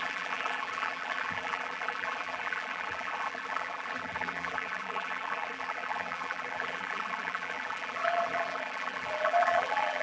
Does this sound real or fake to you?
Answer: fake